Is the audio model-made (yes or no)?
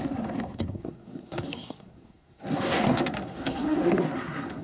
yes